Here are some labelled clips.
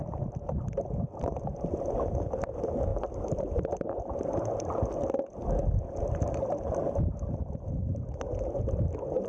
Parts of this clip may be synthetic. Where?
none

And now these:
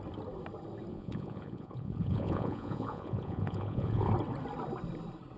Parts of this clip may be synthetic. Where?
0.9-4.1

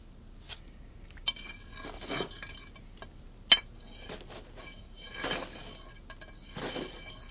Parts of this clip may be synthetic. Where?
none

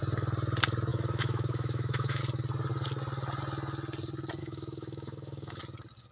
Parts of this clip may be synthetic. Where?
0.9-2.2; 4.4-5.6

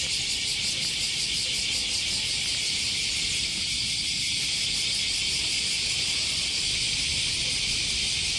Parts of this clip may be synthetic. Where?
0.0-1.4; 6.3-8.4

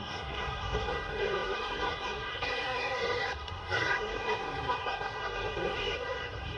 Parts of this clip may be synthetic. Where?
0.0-6.6